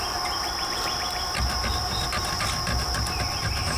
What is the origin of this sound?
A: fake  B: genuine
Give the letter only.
B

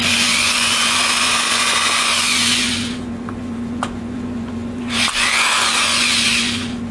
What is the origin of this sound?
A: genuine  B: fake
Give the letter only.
B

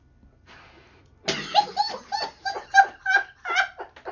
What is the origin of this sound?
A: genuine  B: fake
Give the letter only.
A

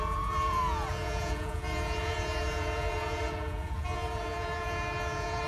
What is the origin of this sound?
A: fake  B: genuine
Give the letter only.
A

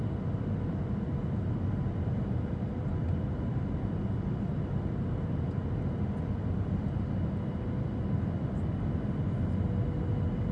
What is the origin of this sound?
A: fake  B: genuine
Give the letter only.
B